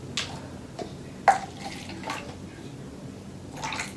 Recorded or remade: recorded